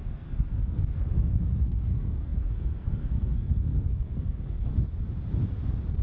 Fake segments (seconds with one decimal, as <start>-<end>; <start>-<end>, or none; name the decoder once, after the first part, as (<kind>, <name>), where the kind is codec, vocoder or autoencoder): 0.0-4.7 (codec, SNAC)

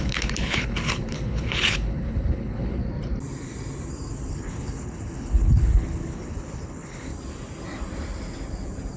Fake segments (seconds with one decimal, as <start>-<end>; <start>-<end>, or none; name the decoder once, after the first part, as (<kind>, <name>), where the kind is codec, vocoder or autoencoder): 0.0-2.8 (codec, HILCodec); 4.3-7.1